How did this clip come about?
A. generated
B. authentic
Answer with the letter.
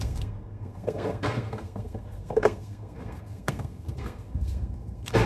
A